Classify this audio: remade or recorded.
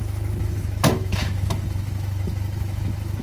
remade